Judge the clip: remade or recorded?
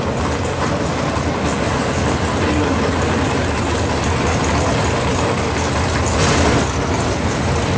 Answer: recorded